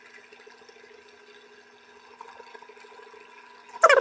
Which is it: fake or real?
real